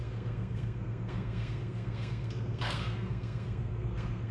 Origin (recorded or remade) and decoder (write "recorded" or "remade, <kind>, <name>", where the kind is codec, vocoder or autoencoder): remade, codec, SNAC